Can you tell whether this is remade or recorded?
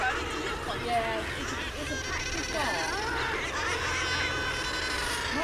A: recorded